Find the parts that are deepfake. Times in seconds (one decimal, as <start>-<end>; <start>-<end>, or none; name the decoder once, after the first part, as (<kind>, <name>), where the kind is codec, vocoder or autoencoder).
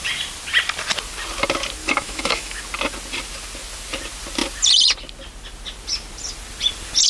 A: 1.8-2.6 (autoencoder, DAC-VAE)